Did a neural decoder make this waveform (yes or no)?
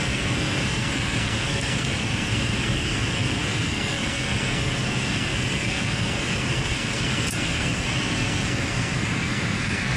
yes